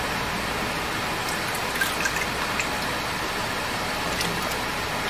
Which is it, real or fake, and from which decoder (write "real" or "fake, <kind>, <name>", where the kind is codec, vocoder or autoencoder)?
real